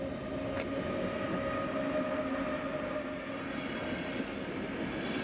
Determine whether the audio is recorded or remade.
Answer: recorded